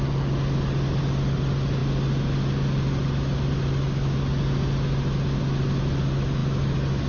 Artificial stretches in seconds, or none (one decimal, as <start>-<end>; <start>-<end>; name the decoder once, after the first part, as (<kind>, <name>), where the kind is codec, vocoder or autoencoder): none